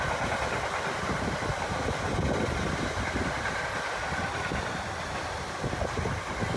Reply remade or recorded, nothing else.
recorded